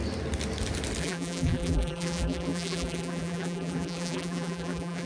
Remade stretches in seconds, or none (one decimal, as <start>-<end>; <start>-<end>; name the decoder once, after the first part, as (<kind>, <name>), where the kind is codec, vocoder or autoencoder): 1.0-5.1 (vocoder, BigVGAN v2)